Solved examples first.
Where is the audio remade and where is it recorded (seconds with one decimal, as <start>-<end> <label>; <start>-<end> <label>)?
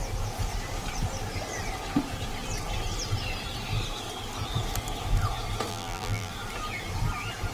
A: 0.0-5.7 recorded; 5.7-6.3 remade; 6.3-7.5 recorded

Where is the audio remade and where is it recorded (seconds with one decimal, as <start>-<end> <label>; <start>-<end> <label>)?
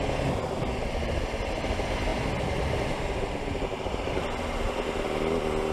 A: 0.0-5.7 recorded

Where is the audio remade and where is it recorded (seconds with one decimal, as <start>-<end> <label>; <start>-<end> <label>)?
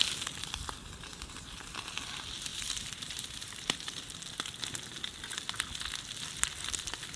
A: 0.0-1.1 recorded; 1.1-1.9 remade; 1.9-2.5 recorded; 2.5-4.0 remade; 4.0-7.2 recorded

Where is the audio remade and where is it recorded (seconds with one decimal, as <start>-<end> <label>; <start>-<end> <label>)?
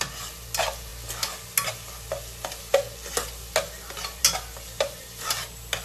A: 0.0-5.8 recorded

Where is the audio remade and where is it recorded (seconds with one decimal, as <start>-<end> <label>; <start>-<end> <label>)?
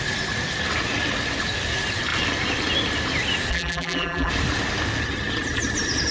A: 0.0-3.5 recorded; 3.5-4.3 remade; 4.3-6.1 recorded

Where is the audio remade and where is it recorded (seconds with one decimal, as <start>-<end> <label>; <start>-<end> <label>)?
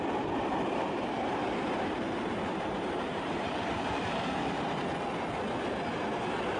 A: 0.0-0.7 recorded; 0.7-4.7 remade; 4.7-6.6 recorded